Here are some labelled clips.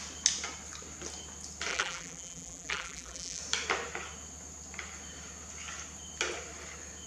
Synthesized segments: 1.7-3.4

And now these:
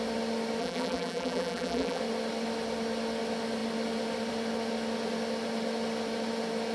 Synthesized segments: 0.6-2.0